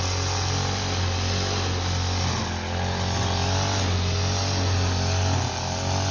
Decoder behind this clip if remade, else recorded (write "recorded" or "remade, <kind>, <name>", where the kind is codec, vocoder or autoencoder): recorded